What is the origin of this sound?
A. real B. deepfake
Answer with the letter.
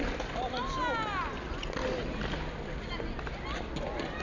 A